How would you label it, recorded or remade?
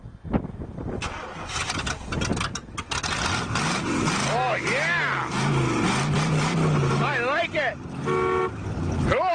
recorded